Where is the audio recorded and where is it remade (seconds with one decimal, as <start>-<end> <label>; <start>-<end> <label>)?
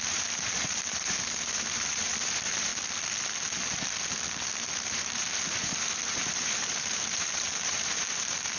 0.0-2.7 remade; 2.7-4.9 recorded; 4.9-8.6 remade